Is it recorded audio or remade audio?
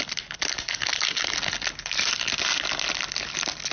recorded